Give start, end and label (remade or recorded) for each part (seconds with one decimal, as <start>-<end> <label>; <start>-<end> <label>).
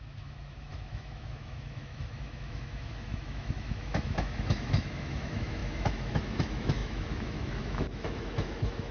0.0-8.9 remade